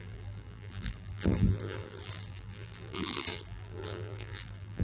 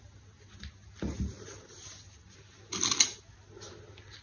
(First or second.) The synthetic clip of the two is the first